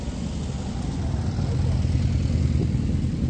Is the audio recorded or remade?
recorded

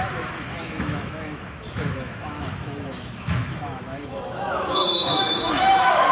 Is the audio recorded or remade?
remade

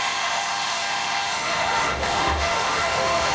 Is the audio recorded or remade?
remade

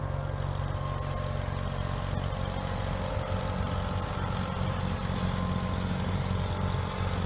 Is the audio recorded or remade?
recorded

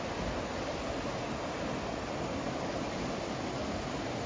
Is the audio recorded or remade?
recorded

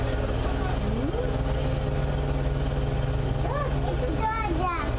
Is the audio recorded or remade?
recorded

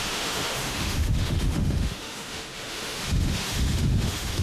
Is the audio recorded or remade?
remade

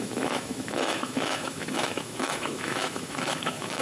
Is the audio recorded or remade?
remade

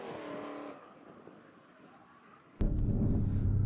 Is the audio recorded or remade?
recorded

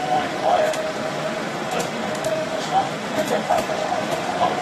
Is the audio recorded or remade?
remade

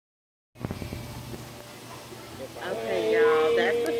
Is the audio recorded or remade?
recorded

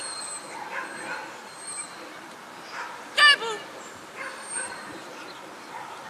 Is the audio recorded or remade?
recorded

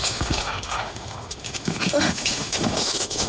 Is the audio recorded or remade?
remade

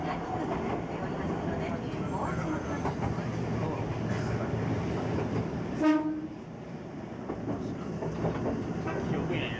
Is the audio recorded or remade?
recorded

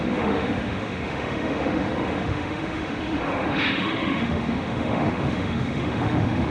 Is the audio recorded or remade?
remade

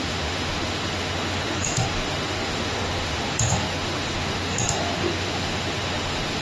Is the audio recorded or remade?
remade